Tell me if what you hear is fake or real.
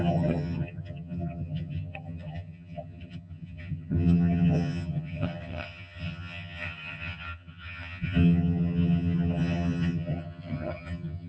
fake